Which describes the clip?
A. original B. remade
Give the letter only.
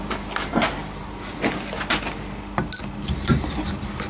A